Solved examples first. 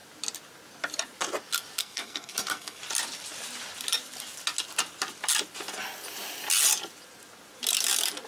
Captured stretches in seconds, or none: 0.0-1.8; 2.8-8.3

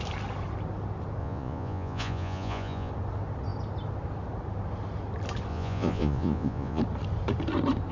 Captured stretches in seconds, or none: 0.0-1.2; 2.9-5.5; 6.8-7.9

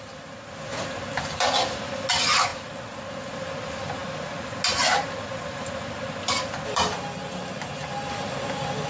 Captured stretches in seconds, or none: 0.0-8.9

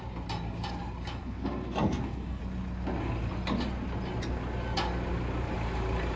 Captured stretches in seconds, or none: 0.0-1.2; 2.4-6.2

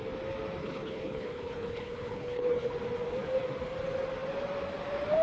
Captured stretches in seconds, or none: 0.0-0.6; 2.7-5.2

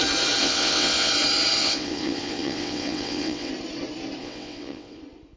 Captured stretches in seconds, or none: 0.0-0.4; 1.1-1.6; 3.5-4.2; 5.0-5.4